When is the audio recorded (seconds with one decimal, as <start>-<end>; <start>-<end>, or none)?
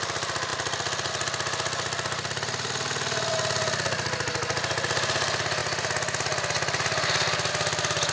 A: 0.0-8.1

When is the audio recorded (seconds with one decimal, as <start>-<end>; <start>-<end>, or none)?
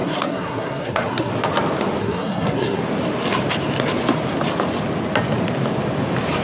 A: 1.3-2.0; 2.8-6.4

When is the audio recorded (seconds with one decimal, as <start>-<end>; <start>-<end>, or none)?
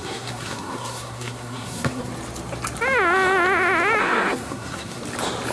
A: 2.1-4.0; 5.0-5.5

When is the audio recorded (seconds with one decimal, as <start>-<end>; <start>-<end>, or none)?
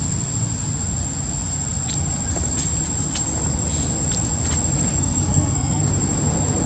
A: 0.0-4.9; 5.9-6.7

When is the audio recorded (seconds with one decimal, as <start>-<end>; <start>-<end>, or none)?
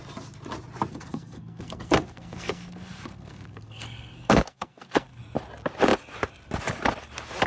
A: 0.0-0.9; 5.2-7.5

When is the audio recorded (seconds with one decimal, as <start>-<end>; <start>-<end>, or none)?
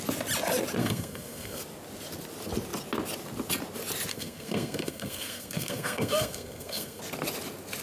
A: 0.0-0.8; 1.6-4.1; 7.0-7.8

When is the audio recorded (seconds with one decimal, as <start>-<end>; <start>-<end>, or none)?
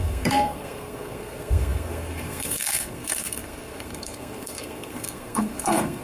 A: none